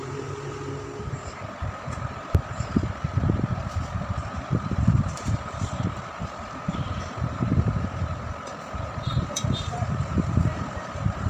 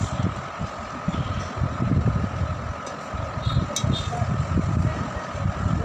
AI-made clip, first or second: first